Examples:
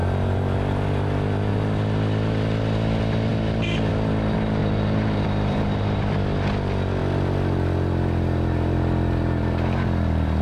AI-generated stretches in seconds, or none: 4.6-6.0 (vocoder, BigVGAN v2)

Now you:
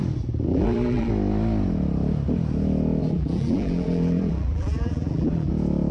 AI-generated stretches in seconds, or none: 0.5-1.1 (vocoder, BigVGAN v2); 3.0-5.5

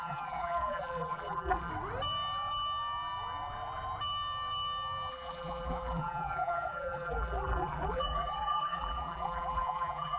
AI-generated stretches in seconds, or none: 0.0-1.7 (vocoder, BigVGAN v2); 5.1-10.2

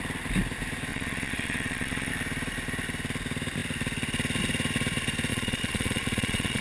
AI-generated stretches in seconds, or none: 0.9-2.1 (vocoder, Vocos); 5.3-6.6

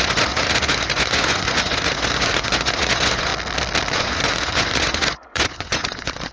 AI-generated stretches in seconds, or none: 0.0-3.3 (vocoder, Vocos); 3.9-6.3

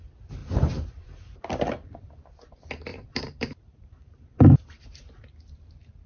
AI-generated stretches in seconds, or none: 0.4-1.4 (vocoder, BigVGAN v2); 2.9-4.8